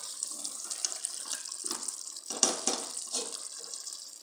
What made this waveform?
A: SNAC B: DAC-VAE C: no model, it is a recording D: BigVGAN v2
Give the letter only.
D